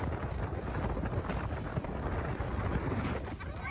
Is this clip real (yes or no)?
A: yes